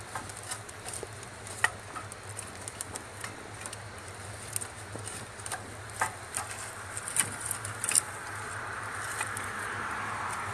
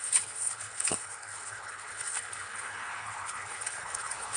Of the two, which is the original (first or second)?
first